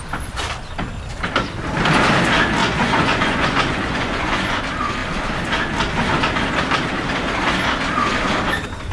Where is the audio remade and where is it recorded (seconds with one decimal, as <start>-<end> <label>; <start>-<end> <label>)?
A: 0.0-2.6 recorded; 2.6-4.6 remade; 4.6-8.9 recorded